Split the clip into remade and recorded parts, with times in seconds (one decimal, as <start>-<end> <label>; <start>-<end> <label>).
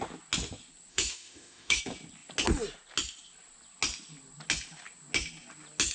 0.0-0.9 recorded; 0.9-1.8 remade; 1.8-5.9 recorded